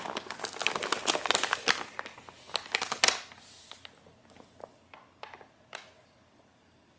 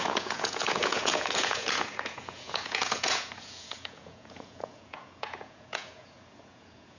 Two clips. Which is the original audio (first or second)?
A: first